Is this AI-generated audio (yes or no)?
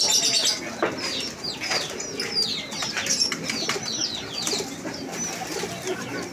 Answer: no